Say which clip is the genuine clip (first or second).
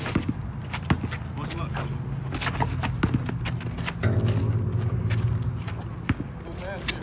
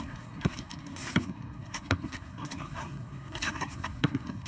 first